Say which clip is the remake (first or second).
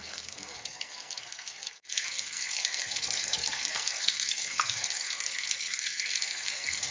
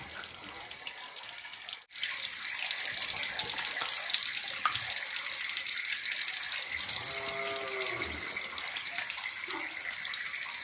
first